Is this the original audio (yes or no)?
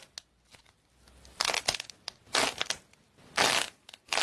yes